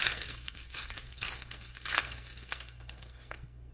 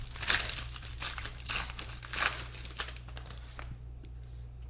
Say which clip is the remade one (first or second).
first